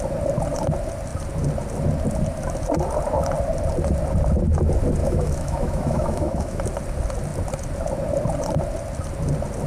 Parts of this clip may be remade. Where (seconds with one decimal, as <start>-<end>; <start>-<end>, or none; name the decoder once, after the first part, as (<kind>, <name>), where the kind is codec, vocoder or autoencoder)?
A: 5.0-6.6 (autoencoder, DAC-VAE)